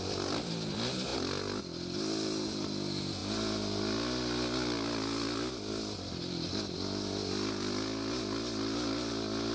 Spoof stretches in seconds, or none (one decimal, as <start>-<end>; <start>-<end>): none

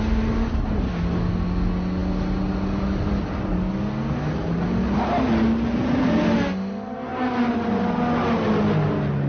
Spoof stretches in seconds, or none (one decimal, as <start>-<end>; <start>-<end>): none

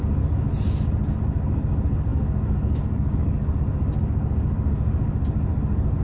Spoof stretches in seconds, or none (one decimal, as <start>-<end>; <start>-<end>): 2.1-3.6

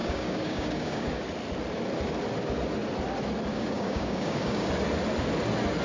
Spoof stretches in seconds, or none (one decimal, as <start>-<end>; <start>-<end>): 0.0-1.2; 3.5-4.7

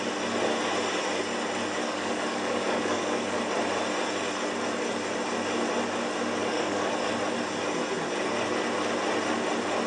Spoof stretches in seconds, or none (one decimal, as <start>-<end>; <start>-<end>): 1.8-3.4; 6.4-7.1